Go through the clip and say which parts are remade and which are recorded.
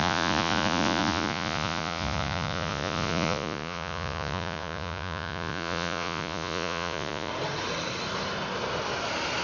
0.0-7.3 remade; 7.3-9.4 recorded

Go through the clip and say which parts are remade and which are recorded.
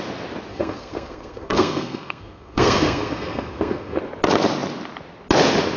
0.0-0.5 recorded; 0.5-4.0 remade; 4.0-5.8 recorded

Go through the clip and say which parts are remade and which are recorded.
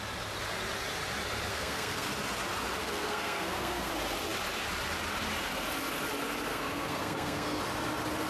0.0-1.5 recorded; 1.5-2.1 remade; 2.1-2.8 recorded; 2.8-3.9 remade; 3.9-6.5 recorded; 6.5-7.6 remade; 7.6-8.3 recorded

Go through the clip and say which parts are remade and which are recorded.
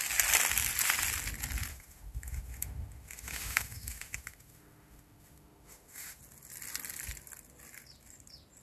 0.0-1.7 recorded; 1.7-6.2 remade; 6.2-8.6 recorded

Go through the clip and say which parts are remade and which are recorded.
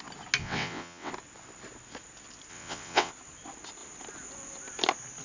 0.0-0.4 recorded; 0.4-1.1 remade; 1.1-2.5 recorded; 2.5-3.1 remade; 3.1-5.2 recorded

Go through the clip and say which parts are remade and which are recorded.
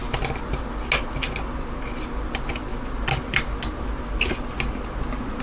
0.0-5.4 recorded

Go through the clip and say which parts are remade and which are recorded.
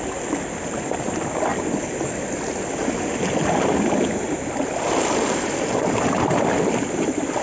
0.0-7.4 recorded